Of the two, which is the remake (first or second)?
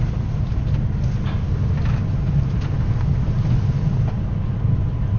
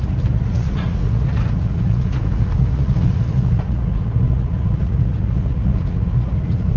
second